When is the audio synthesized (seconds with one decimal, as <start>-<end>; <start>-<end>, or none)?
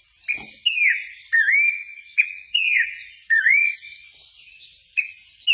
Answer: 1.8-5.1